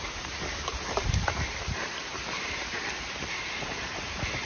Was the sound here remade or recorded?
remade